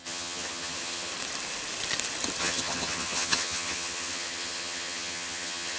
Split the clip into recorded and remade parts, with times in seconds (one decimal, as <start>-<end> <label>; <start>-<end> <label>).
0.0-1.1 remade; 1.1-2.4 recorded; 2.4-5.8 remade